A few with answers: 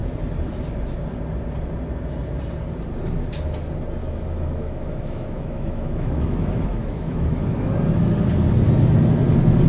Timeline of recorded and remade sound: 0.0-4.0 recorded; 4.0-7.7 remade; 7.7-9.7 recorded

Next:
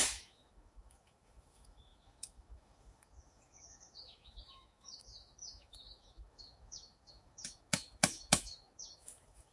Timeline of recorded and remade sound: 0.0-9.5 remade

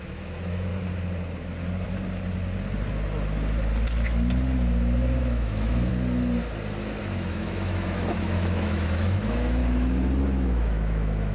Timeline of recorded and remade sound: 0.0-0.7 remade; 0.7-5.2 recorded; 5.2-5.9 remade; 5.9-7.0 recorded; 7.0-9.6 remade; 9.6-10.2 recorded; 10.2-11.3 remade

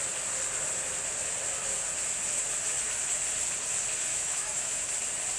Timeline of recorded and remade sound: 0.0-4.1 recorded; 4.1-4.9 remade; 4.9-5.4 recorded

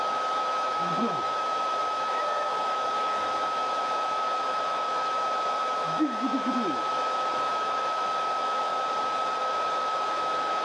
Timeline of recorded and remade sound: 0.0-8.7 remade; 8.7-9.4 recorded; 9.4-10.6 remade

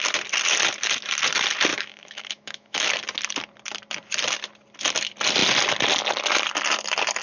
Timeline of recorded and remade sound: 0.0-1.7 recorded; 1.7-2.9 remade; 2.9-7.2 recorded